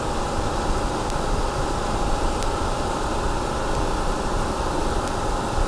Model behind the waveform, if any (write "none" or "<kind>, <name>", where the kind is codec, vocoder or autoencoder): none